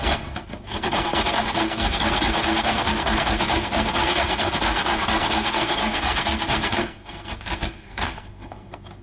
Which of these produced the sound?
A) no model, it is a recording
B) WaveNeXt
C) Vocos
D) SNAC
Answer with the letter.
D